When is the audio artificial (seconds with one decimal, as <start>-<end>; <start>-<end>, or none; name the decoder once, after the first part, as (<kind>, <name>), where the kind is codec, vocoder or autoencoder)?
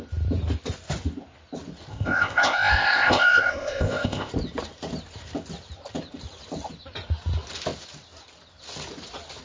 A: 1.9-4.3 (codec, ZipCodec)